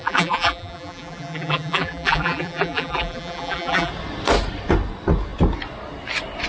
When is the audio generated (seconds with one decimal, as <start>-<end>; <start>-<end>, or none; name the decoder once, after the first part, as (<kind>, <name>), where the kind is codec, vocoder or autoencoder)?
0.0-3.9 (vocoder, BigVGAN v2)